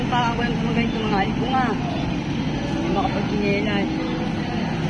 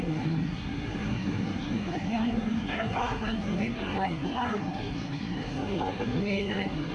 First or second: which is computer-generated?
second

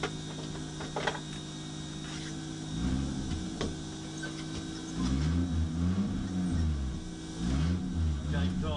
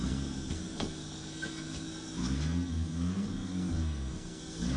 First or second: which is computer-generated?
second